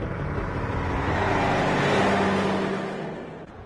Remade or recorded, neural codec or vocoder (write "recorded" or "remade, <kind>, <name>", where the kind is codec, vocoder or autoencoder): recorded